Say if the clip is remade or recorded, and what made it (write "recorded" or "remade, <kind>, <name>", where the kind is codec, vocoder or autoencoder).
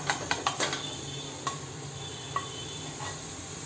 remade, vocoder, BigVGAN v2